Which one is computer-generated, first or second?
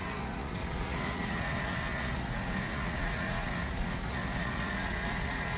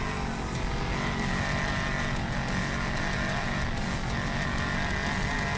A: first